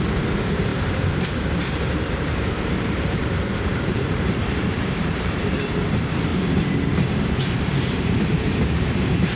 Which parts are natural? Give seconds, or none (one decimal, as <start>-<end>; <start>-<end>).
6.3-7.4